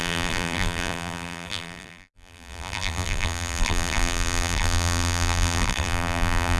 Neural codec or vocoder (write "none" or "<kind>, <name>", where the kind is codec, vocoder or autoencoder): vocoder, BigVGAN v2